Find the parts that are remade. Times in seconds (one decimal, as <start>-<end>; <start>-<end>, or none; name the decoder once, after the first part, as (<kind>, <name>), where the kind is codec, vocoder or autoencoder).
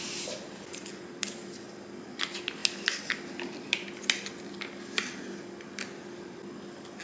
none